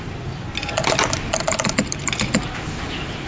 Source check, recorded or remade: recorded